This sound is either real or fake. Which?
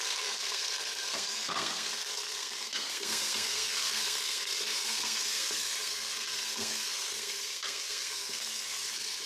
fake